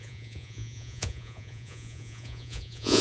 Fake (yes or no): yes